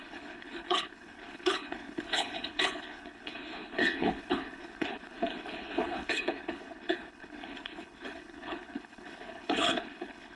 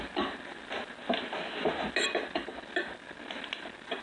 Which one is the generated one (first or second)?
first